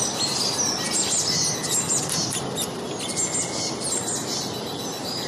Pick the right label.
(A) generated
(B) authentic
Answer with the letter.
B